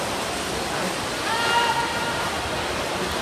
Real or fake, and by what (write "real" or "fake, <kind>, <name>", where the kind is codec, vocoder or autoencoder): real